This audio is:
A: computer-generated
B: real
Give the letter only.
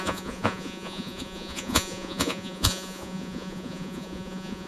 A